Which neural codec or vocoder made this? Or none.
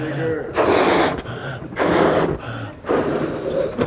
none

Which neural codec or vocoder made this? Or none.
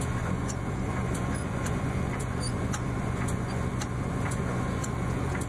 vocoder, Vocos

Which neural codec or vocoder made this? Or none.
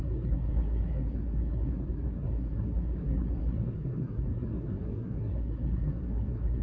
codec, SNAC